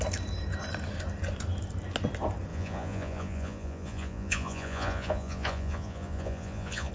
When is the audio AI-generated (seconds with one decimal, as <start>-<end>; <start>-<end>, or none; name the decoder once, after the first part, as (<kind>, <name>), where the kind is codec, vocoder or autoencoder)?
2.5-6.9 (vocoder, Vocos)